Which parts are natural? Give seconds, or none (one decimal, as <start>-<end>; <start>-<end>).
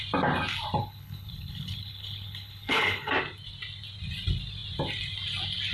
0.0-0.8; 3.1-5.7